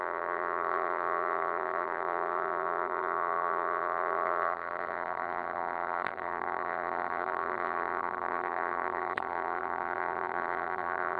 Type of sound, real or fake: fake